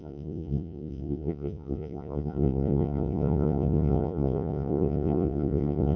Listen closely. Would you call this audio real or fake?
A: fake